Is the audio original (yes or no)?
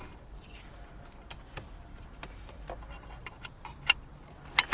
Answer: yes